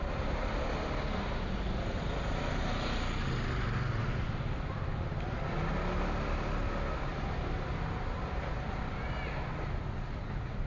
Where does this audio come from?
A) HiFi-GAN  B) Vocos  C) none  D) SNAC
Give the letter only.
C